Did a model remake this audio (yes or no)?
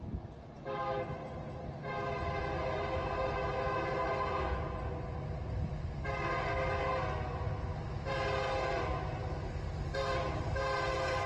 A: no